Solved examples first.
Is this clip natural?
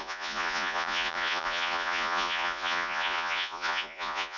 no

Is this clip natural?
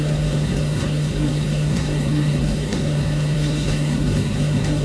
no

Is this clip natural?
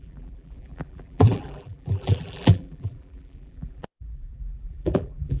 no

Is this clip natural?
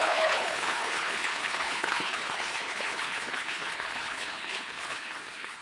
no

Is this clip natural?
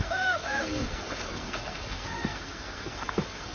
no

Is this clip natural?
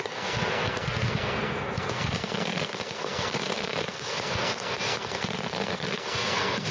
no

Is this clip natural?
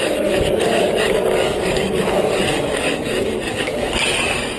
no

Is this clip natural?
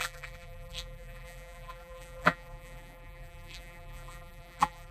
no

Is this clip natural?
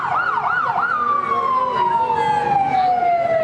yes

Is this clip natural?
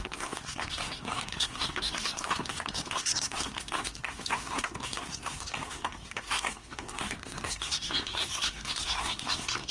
no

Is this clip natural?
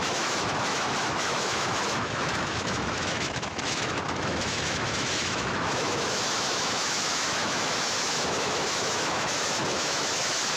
no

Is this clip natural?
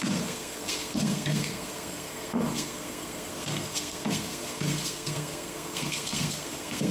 no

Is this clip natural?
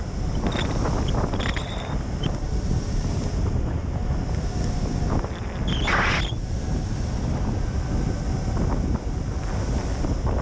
yes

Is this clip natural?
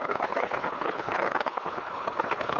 no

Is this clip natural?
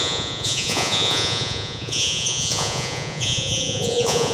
no